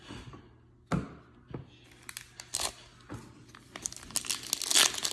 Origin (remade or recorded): recorded